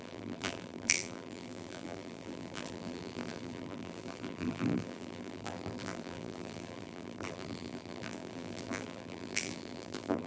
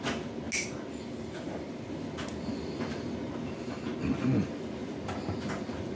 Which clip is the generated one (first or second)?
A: first